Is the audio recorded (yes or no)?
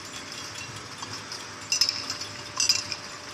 yes